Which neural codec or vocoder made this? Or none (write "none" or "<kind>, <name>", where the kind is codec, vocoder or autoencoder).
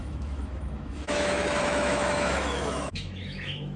autoencoder, DAC-VAE